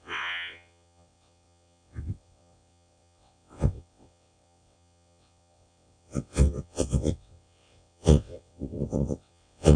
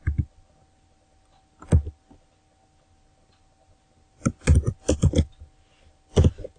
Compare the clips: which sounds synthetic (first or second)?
first